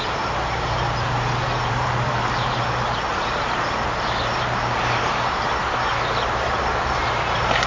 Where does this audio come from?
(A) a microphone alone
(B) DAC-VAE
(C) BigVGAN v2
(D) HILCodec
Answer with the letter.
C